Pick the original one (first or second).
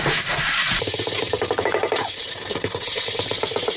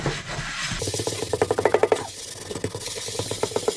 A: second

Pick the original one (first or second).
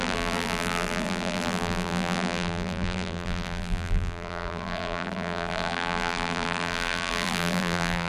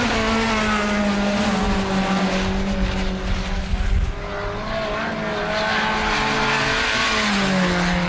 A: second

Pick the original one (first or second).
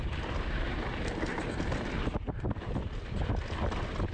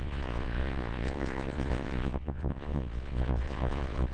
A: first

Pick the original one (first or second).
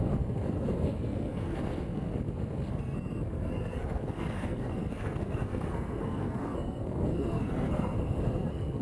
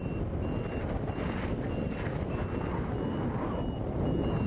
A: second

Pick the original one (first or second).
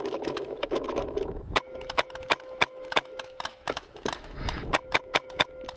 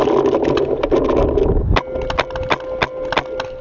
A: second